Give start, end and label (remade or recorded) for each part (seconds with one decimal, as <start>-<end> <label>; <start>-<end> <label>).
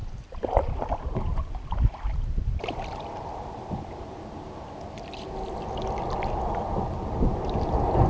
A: 0.0-3.4 remade; 3.4-8.1 recorded